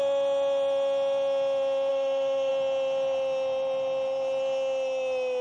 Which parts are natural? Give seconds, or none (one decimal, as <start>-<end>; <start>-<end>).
0.0-1.9; 2.5-5.4